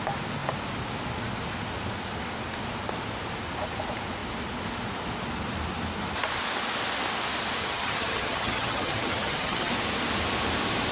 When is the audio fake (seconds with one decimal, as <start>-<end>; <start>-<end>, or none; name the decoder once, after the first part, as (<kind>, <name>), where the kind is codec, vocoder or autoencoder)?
7.6-9.7 (vocoder, HiFi-GAN)